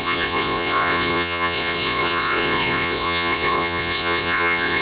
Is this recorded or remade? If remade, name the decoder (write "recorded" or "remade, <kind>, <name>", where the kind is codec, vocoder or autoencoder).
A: remade, vocoder, Vocos